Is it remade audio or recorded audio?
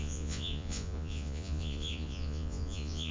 remade